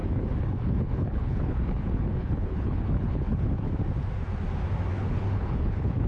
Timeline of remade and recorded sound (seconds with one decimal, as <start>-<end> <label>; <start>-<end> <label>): 0.0-3.7 remade; 3.7-4.9 recorded; 4.9-6.1 remade

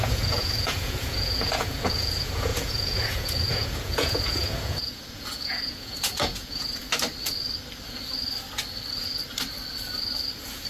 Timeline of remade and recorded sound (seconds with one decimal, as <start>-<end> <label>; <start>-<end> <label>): 0.0-6.8 remade; 6.8-10.7 recorded

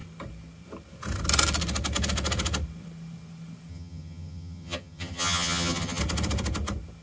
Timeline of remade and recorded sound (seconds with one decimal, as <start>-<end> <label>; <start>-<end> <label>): 0.0-3.7 recorded; 3.7-6.0 remade; 6.0-7.0 recorded